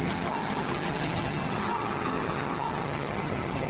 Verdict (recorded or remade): remade